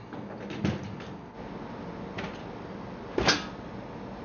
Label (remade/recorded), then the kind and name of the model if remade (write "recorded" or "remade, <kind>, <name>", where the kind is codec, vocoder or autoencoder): recorded